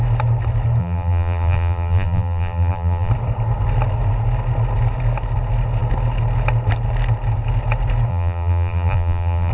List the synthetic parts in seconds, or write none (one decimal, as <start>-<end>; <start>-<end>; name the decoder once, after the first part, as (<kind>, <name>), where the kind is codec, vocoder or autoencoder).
0.8-3.1 (vocoder, BigVGAN v2); 8.1-9.5